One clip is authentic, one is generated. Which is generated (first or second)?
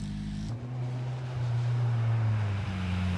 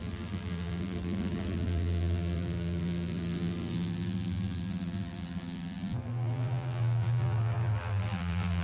second